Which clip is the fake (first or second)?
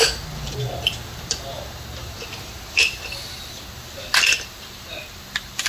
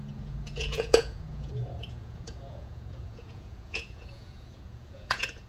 second